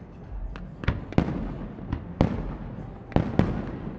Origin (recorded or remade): recorded